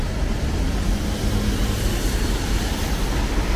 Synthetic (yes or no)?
no